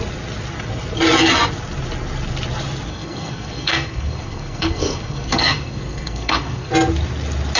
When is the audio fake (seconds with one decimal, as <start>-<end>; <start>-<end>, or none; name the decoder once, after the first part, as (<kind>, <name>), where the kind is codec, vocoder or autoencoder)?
2.9-6.7 (codec, SNAC)